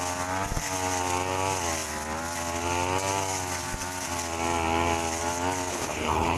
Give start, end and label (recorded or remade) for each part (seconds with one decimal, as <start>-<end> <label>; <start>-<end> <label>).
0.0-5.7 recorded; 5.7-6.4 remade